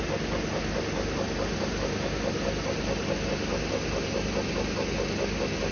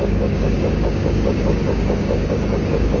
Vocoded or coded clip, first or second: second